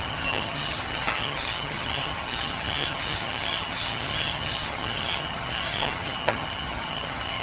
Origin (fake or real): fake